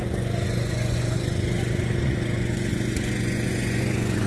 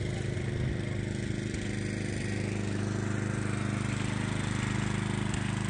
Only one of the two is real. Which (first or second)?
second